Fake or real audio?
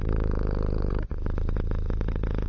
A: real